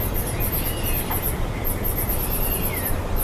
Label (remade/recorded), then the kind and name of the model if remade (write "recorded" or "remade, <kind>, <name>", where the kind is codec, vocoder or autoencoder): recorded